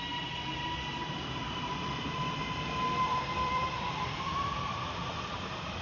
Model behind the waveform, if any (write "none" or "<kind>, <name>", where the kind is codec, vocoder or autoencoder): vocoder, BigVGAN v2